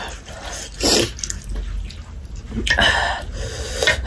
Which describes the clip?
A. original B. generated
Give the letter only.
A